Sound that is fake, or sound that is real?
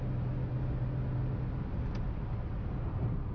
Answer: real